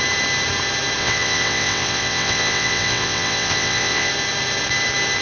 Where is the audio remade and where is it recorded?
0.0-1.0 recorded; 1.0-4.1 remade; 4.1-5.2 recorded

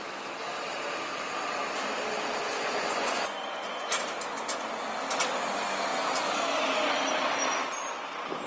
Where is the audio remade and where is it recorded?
0.0-2.4 recorded; 2.4-3.9 remade; 3.9-8.5 recorded

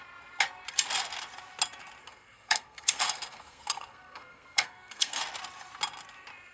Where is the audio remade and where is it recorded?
0.0-2.0 recorded; 2.0-5.2 remade; 5.2-6.5 recorded

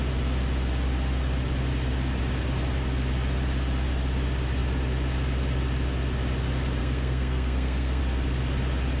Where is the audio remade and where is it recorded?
0.0-6.8 recorded; 6.8-8.0 remade; 8.0-9.0 recorded

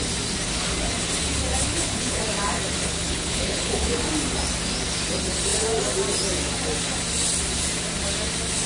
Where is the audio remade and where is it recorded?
0.0-1.6 recorded; 1.6-2.2 remade; 2.2-2.8 recorded; 2.8-4.0 remade; 4.0-8.7 recorded